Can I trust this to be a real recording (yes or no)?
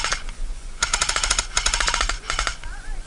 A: no